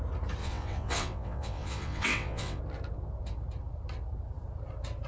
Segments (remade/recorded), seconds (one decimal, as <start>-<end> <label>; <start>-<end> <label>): 0.0-0.4 recorded; 0.4-2.6 remade; 2.6-5.1 recorded